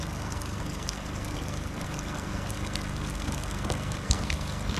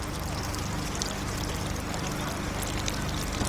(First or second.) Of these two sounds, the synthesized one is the first